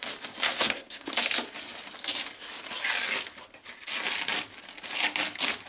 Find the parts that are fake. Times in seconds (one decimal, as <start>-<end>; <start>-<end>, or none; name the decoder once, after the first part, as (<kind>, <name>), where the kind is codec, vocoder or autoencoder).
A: 0.4-1.1 (codec, SNAC)